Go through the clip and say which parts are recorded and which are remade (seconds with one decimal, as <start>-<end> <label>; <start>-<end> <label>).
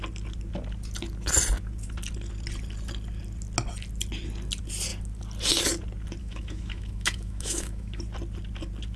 0.0-6.2 recorded; 6.2-8.0 remade; 8.0-9.0 recorded